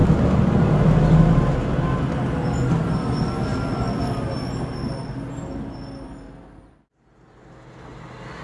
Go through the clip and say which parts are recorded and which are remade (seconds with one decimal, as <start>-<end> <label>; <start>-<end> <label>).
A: 0.0-8.4 recorded